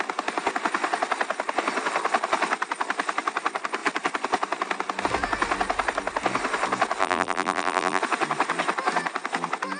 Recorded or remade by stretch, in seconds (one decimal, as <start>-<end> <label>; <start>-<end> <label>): 0.0-7.0 recorded; 7.0-8.0 remade; 8.0-9.8 recorded